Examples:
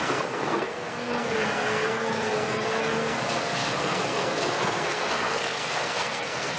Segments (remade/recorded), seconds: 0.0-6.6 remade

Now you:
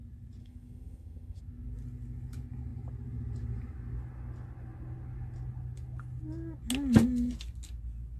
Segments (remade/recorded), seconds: 0.0-0.4 recorded; 0.4-1.4 remade; 1.4-8.2 recorded

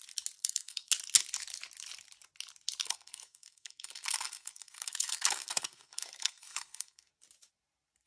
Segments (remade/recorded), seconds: 0.0-0.4 recorded; 0.4-0.9 remade; 0.9-2.8 recorded; 2.8-7.1 remade; 7.1-8.1 recorded

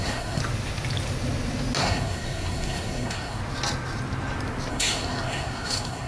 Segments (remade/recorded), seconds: 0.0-0.4 remade; 0.4-1.8 recorded; 1.8-3.4 remade; 3.4-4.7 recorded; 4.7-6.1 remade

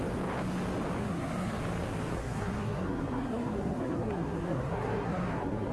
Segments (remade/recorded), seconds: 0.0-1.0 recorded; 1.0-1.6 remade; 1.6-2.2 recorded; 2.2-5.7 remade

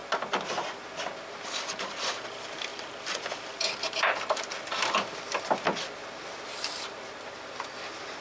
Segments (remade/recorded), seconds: 0.0-8.2 recorded